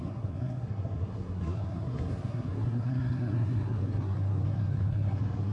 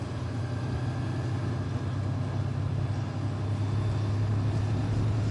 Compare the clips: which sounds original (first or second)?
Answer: second